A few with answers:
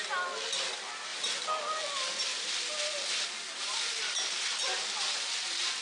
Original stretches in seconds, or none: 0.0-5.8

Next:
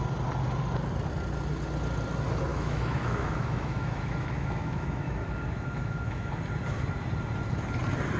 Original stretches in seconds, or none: 0.0-2.5; 6.3-8.2

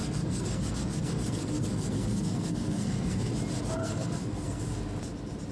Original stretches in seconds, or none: 3.3-3.8; 4.6-5.5

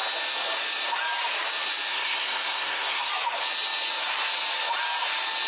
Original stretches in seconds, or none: 0.0-1.9; 3.1-5.5

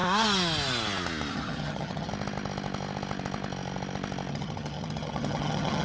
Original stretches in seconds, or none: 0.0-1.3; 2.1-4.3

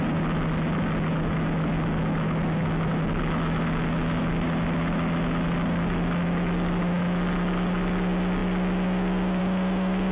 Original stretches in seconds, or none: 0.0-10.1

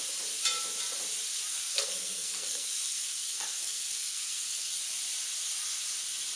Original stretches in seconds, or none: 0.0-1.5; 4.8-6.4